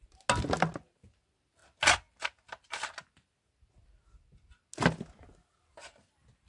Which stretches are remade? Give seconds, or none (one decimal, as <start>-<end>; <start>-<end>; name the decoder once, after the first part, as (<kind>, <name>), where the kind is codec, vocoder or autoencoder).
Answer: none